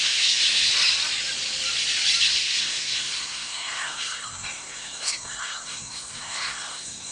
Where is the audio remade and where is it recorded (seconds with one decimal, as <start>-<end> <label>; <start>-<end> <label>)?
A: 0.0-0.7 remade; 0.7-2.2 recorded; 2.2-7.1 remade